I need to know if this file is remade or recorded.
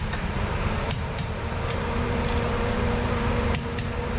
remade